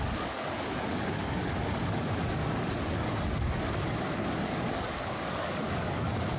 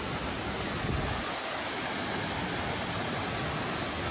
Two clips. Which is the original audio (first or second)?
second